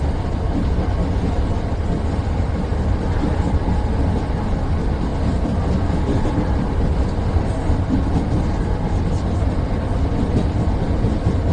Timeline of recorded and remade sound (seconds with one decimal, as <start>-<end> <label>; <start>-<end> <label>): 0.0-11.5 recorded